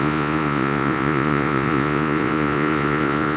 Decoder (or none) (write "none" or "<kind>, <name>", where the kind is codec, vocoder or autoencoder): vocoder, Vocos